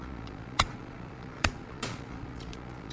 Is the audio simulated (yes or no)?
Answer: yes